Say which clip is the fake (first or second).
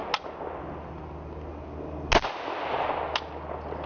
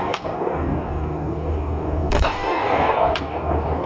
second